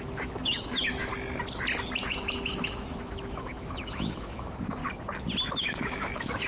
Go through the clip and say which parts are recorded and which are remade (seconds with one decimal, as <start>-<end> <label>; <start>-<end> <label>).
0.0-1.1 remade; 1.1-2.0 recorded; 2.0-4.8 remade; 4.8-5.5 recorded; 5.5-6.5 remade